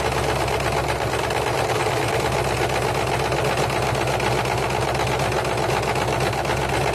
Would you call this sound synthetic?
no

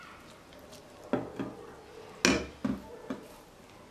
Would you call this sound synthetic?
no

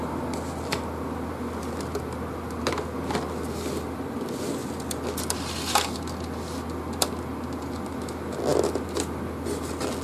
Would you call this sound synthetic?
no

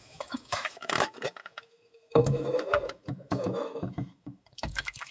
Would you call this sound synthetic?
yes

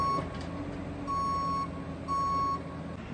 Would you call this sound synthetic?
no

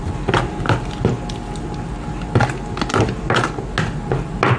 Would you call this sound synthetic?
no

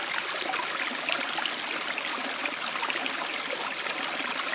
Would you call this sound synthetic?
no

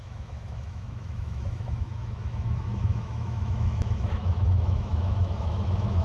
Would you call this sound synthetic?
yes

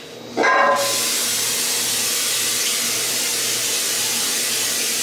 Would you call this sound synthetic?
no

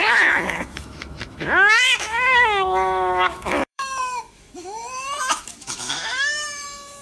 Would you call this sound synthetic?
yes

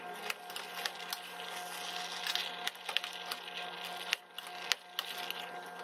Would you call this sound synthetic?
no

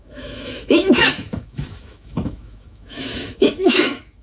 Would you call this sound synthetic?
yes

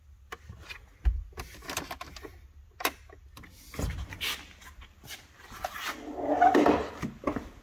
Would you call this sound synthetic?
no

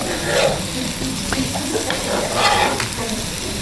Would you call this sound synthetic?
no